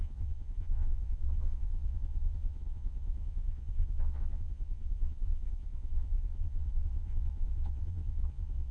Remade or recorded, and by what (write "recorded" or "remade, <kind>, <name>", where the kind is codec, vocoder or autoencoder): remade, vocoder, Vocos